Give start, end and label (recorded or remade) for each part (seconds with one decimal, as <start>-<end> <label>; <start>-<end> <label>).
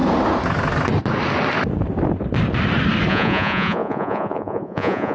0.0-3.1 recorded; 3.1-5.1 remade